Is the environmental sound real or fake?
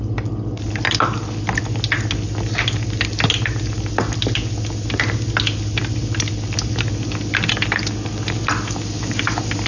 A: real